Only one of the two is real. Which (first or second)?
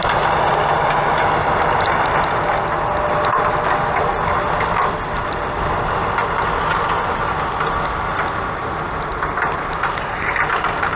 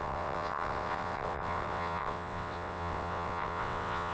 first